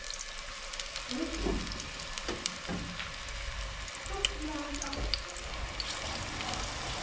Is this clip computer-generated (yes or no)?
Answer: no